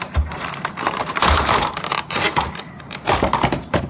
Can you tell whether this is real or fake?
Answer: fake